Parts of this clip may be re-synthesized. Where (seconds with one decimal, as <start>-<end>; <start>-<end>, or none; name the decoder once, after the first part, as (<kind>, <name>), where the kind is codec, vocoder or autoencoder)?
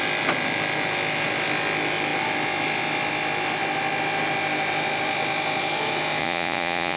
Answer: 6.2-7.0 (vocoder, Vocos)